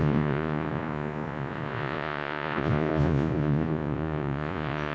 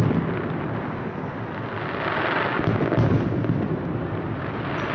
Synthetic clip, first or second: first